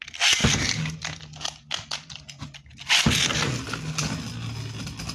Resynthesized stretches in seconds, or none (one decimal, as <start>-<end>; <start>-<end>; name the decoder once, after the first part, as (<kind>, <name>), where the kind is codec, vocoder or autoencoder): none